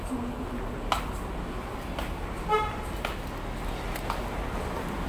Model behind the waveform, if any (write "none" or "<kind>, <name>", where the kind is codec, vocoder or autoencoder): none